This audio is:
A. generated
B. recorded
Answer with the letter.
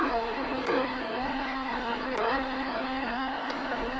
A